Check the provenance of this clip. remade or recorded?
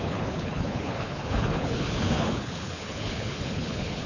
remade